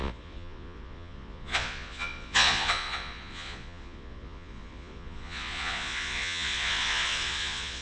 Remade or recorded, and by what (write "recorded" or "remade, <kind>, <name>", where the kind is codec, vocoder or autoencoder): remade, vocoder, Vocos